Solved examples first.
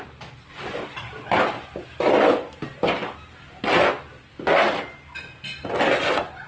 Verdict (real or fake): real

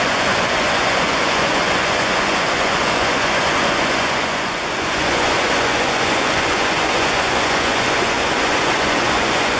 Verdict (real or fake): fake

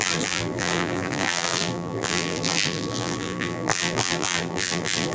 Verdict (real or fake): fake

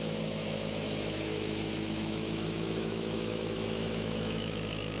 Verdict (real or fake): fake